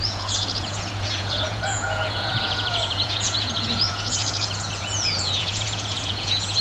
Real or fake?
fake